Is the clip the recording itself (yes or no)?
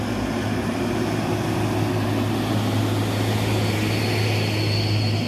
yes